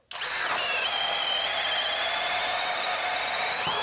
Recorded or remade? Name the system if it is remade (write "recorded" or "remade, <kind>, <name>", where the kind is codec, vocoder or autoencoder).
recorded